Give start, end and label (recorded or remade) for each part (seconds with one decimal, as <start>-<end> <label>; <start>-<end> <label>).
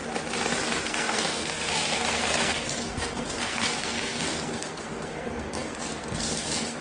0.0-0.8 recorded; 0.8-6.8 remade